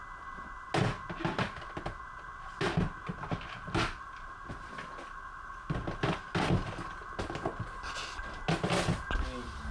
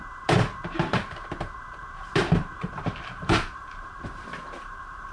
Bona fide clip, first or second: first